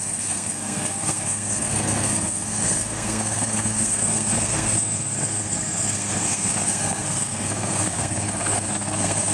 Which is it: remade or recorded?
remade